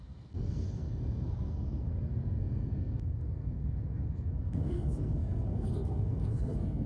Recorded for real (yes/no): no